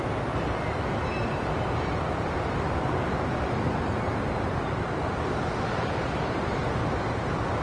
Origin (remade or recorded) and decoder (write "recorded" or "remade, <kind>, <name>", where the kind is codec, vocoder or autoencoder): recorded